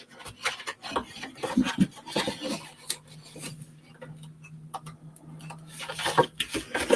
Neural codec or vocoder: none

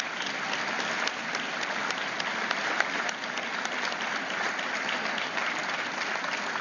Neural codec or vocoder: none